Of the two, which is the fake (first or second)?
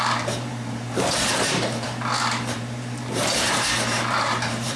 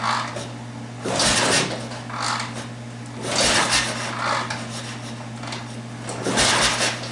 first